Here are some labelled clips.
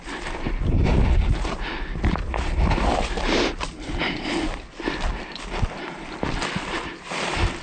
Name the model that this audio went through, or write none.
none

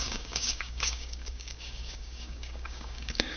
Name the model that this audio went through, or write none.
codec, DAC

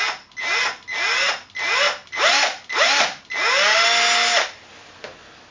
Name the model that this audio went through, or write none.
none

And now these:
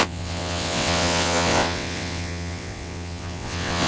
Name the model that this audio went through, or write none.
vocoder, WaveNeXt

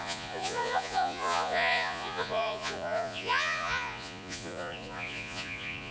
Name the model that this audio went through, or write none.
vocoder, Vocos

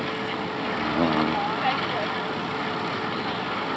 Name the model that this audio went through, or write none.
none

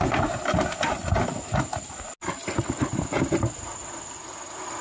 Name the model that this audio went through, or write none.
none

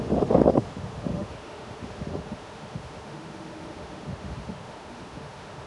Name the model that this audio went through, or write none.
autoencoder, DAC-VAE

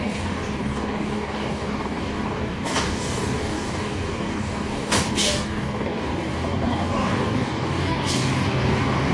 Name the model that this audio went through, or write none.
codec, DAC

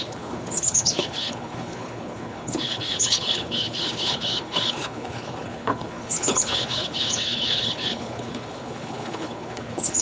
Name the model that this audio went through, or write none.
codec, HILCodec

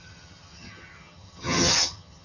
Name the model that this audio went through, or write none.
vocoder, HiFi-GAN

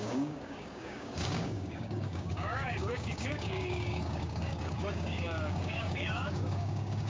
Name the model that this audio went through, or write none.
codec, DAC